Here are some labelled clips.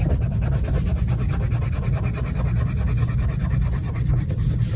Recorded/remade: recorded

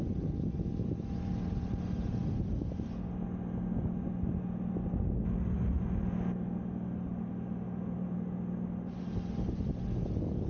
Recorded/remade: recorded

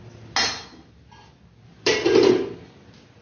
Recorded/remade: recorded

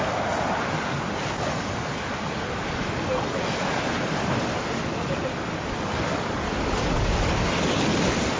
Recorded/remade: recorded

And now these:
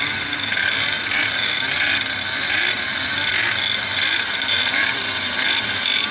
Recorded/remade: remade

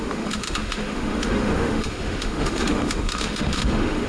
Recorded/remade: remade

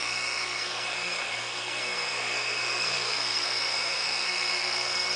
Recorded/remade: remade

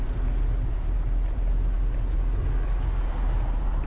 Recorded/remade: recorded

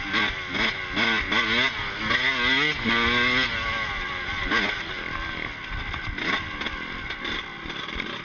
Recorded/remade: recorded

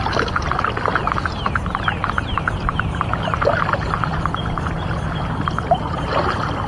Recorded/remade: recorded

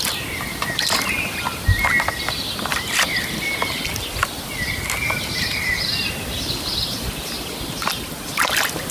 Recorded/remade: recorded